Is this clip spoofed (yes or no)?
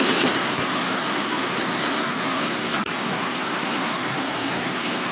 yes